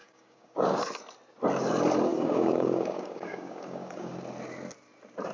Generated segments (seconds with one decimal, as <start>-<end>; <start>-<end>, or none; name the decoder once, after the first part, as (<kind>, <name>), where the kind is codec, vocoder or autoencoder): 0.0-0.8 (codec, DAC); 2.1-4.1